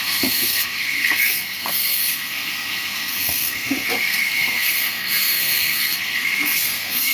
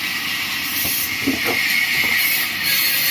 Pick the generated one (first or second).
first